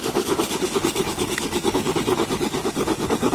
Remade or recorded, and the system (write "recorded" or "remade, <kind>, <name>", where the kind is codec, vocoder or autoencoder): remade, codec, DAC